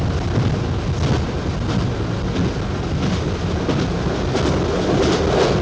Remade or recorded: recorded